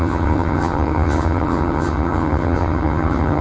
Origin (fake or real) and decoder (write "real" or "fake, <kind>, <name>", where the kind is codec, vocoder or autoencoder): fake, vocoder, HiFi-GAN